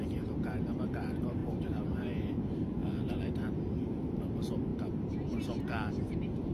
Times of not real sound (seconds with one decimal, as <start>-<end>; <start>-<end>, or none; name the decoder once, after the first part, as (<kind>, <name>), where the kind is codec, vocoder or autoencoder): 0.0-6.5 (vocoder, BigVGAN v2)

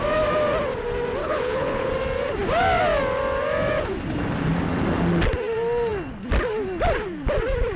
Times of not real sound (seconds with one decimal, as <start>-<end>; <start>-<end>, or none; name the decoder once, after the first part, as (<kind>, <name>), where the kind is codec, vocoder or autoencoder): 1.2-1.9 (codec, HILCodec)

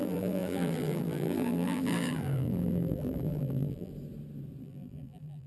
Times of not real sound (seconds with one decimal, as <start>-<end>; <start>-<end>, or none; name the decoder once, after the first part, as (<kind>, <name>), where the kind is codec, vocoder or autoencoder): 0.0-3.9 (vocoder, BigVGAN v2); 4.6-5.5

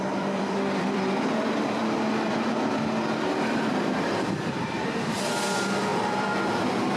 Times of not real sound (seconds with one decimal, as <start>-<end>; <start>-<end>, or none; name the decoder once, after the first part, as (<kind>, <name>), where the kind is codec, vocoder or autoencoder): 0.0-1.8 (vocoder, BigVGAN v2); 3.3-7.0

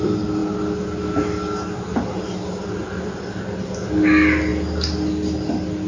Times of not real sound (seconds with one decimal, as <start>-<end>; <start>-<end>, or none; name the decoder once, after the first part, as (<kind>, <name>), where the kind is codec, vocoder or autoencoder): none